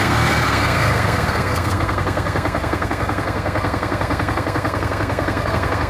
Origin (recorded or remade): remade